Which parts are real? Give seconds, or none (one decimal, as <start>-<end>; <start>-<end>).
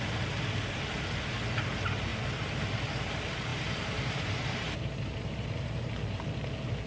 0.0-2.1; 3.1-3.5; 5.9-6.9